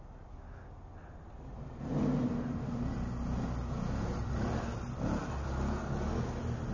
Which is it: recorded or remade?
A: recorded